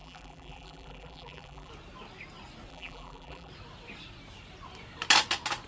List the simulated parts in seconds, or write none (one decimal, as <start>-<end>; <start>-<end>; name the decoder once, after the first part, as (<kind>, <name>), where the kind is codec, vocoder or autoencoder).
0.0-1.7 (vocoder, BigVGAN v2); 2.7-3.5